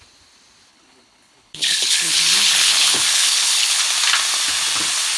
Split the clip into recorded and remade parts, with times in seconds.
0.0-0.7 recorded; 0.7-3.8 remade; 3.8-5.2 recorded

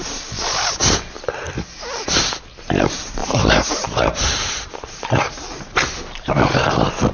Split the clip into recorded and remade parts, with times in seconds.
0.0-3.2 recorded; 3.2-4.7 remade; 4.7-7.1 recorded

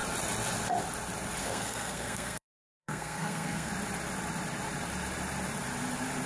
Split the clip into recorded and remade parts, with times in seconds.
0.0-1.4 recorded; 1.4-3.7 remade; 3.7-6.3 recorded

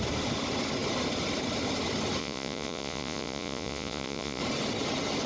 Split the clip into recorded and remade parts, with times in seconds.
0.0-2.2 recorded; 2.2-4.4 remade; 4.4-5.3 recorded

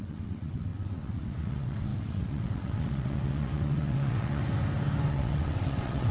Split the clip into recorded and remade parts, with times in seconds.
0.0-4.4 remade; 4.4-5.1 recorded; 5.1-6.1 remade